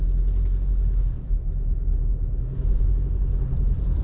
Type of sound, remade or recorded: recorded